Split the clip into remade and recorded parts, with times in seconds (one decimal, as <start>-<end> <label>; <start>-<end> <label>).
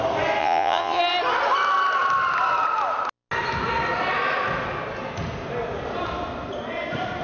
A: 0.0-0.4 recorded; 0.4-1.0 remade; 1.0-7.2 recorded